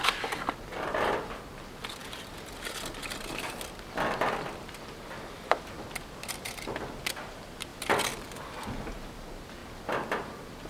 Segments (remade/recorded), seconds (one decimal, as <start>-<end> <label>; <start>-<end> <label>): 0.0-0.7 recorded; 0.7-1.4 remade; 1.4-7.7 recorded; 7.7-8.7 remade; 8.7-9.6 recorded; 9.6-10.7 remade